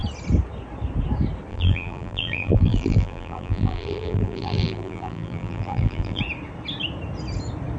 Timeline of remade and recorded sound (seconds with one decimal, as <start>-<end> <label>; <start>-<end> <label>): 0.0-1.5 recorded; 1.5-6.2 remade; 6.2-7.8 recorded